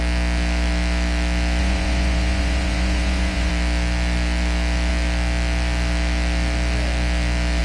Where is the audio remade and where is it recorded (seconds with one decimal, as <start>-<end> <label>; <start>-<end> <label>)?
0.0-1.6 recorded; 1.6-3.5 remade; 3.5-7.6 recorded